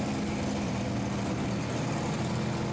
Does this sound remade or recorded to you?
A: recorded